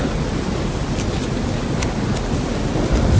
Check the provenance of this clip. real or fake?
real